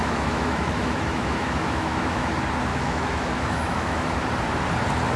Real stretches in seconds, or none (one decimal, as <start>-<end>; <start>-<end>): 2.3-2.7; 4.3-5.2